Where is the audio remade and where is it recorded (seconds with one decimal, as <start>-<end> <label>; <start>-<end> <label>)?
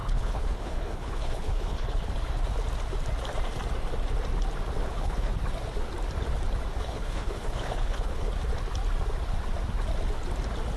0.0-2.1 remade; 2.1-4.8 recorded; 4.8-5.3 remade; 5.3-6.7 recorded; 6.7-8.3 remade; 8.3-10.8 recorded